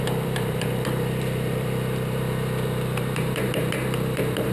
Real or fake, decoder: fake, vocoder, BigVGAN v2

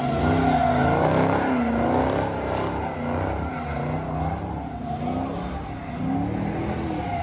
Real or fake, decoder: real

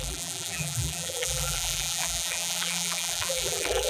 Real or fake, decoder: fake, vocoder, BigVGAN v2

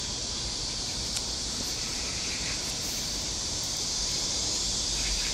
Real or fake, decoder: fake, vocoder, BigVGAN v2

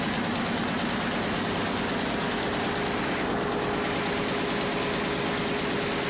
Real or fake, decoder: real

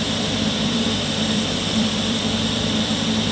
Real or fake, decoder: fake, vocoder, BigVGAN v2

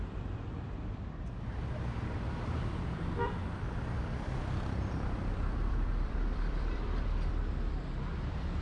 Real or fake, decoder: fake, vocoder, BigVGAN v2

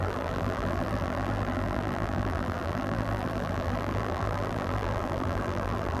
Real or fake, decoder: fake, vocoder, BigVGAN v2